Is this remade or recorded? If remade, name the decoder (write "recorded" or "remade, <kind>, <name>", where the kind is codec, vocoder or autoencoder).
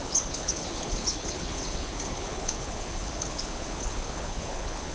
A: remade, codec, HILCodec